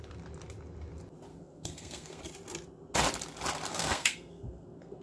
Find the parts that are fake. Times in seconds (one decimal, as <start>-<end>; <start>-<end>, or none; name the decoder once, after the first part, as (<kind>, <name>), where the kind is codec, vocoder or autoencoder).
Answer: 1.3-2.2 (codec, SNAC); 3.7-5.0